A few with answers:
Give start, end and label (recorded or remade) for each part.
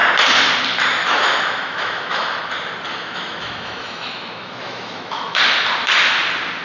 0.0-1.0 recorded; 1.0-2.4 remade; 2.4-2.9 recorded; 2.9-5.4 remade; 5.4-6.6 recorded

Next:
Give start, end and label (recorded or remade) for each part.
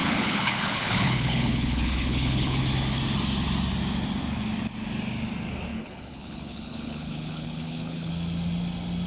0.0-2.6 remade; 2.6-5.7 recorded; 5.7-8.1 remade; 8.1-9.1 recorded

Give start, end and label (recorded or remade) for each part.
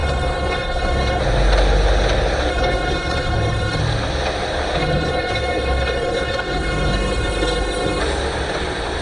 0.0-1.2 remade; 1.2-2.5 recorded; 2.5-3.8 remade; 3.8-4.8 recorded; 4.8-8.0 remade; 8.0-9.0 recorded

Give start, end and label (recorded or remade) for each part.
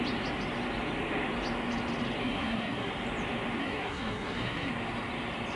0.0-2.2 recorded; 2.2-2.9 remade; 2.9-3.6 recorded; 3.6-4.7 remade; 4.7-5.6 recorded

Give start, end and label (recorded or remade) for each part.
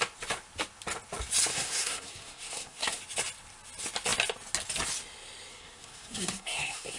0.0-1.5 recorded; 1.5-3.0 remade; 3.0-5.5 recorded; 5.5-7.0 remade